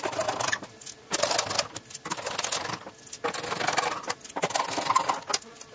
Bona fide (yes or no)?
yes